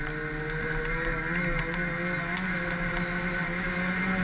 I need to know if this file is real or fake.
real